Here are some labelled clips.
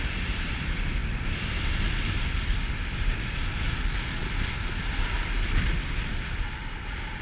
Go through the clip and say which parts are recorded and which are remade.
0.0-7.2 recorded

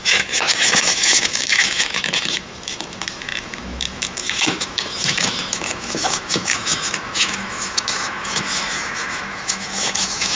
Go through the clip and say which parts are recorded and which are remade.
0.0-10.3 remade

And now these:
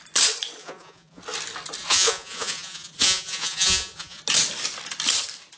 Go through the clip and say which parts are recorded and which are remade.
0.0-0.6 recorded; 0.6-1.2 remade; 1.2-1.8 recorded; 1.8-4.2 remade; 4.2-5.6 recorded